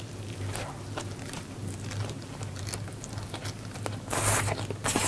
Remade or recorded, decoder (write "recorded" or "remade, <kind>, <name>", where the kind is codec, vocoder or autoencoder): recorded